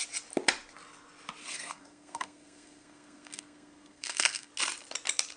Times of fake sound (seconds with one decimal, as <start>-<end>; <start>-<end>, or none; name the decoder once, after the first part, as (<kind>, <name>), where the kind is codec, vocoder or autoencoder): 1.4-4.5 (codec, SNAC)